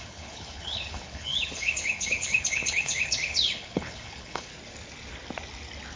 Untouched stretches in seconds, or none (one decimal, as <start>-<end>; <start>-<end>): 4.5-6.0